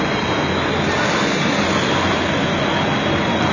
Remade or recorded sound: recorded